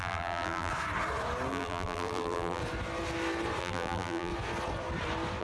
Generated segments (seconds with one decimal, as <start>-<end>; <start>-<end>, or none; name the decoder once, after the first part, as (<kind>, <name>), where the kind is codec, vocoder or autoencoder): 0.0-0.7 (vocoder, BigVGAN v2); 1.5-2.6; 3.6-4.3